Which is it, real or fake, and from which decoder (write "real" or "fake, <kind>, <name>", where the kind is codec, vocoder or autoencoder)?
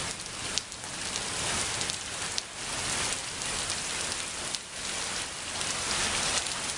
real